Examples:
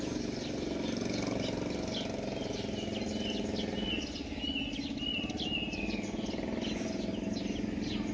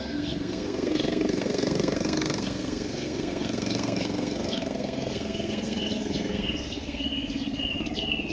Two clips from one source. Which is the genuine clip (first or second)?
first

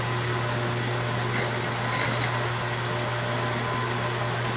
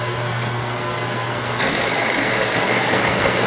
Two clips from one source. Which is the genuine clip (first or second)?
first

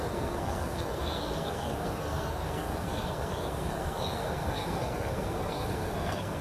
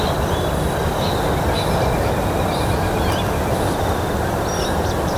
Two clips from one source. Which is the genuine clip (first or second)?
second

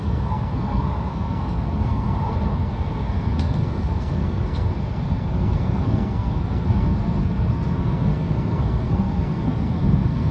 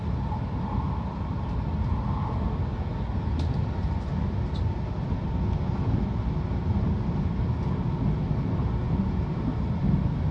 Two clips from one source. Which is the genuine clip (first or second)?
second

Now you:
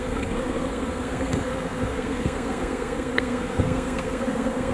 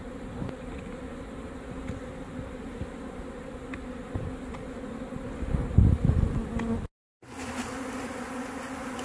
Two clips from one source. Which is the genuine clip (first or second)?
second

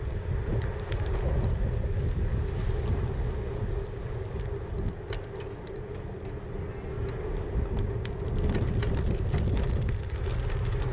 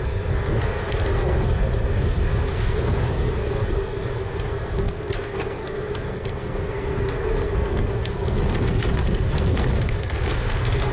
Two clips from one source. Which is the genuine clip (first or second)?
first